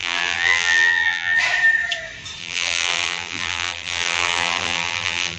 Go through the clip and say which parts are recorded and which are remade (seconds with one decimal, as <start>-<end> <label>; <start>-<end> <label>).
0.0-1.4 remade; 1.4-2.4 recorded; 2.4-5.4 remade